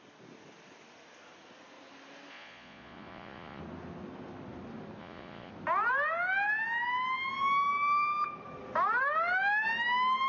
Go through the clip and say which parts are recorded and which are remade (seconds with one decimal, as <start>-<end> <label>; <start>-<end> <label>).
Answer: 0.0-2.3 recorded; 2.3-3.6 remade; 3.6-5.0 recorded; 5.0-5.5 remade; 5.5-10.3 recorded